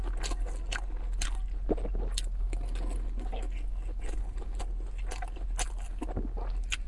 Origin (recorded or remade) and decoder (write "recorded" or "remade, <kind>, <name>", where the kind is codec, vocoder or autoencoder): recorded